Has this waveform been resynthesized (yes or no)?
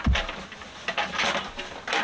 no